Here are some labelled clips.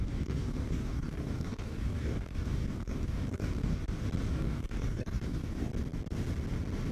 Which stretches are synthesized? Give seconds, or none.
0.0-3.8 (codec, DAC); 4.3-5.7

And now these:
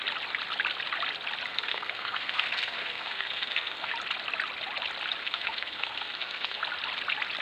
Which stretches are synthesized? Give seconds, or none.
1.5-3.9 (codec, SNAC); 5.2-6.6